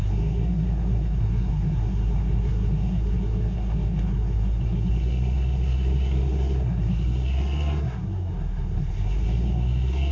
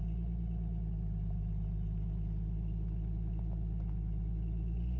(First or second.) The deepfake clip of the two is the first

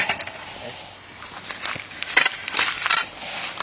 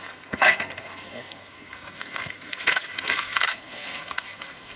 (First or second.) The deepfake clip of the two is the second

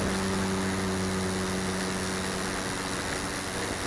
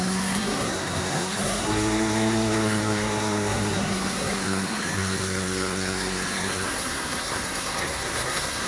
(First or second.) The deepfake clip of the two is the second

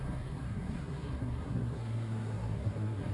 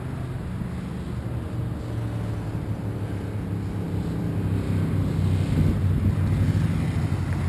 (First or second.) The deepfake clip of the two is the first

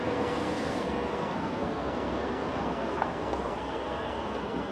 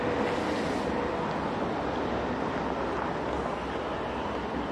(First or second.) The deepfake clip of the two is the first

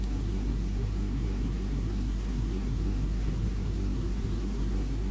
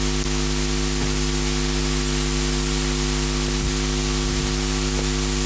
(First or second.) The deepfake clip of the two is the first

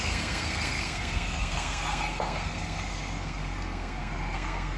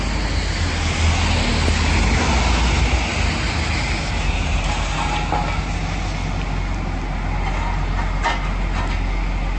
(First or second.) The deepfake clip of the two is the first